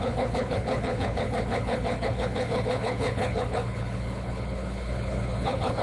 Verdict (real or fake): fake